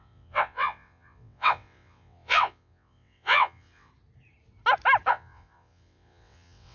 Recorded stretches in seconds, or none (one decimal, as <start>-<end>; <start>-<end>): 3.9-5.1

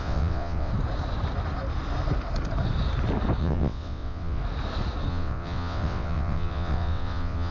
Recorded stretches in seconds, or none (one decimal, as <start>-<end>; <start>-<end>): 0.7-3.4; 4.4-5.1